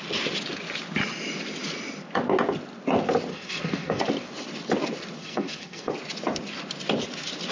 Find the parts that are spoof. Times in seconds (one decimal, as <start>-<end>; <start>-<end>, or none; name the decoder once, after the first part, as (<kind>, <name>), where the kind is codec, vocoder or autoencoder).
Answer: 3.3-4.0 (codec, SNAC); 5.2-5.9